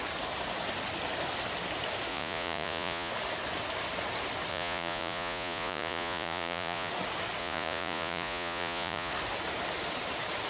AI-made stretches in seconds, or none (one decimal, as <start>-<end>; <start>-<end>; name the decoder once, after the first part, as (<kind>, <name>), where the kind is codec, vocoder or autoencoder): 2.1-3.1 (vocoder, Vocos); 4.5-6.9; 7.4-9.1